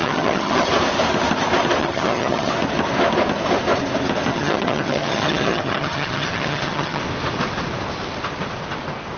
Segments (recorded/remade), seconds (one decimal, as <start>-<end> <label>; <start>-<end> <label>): 0.0-0.7 remade; 0.7-1.8 recorded; 1.8-2.5 remade; 2.5-4.3 recorded; 4.3-7.0 remade; 7.0-9.2 recorded